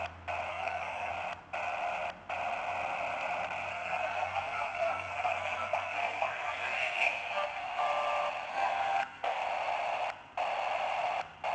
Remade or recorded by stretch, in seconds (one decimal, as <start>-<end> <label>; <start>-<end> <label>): 0.0-0.5 recorded; 0.5-1.1 remade; 1.1-3.7 recorded; 3.7-7.8 remade; 7.8-8.5 recorded; 8.5-9.4 remade; 9.4-11.5 recorded